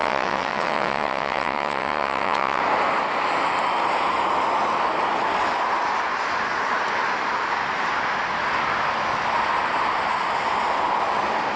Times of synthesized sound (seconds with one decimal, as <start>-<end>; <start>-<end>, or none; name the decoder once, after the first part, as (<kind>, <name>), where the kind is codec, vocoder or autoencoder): 0.0-2.6 (vocoder, WaveNeXt)